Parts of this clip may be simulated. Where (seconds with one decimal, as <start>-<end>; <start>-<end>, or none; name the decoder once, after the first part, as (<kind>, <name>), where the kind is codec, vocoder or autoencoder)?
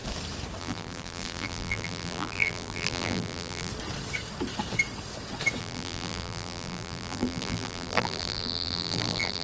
0.6-3.7 (vocoder, BigVGAN v2); 5.6-9.4